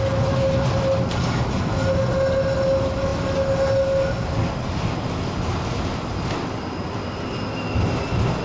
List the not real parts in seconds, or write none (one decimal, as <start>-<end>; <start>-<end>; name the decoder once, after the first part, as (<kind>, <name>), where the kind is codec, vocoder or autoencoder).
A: none